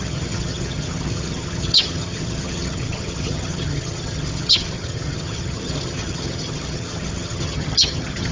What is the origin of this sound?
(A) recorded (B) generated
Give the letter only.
B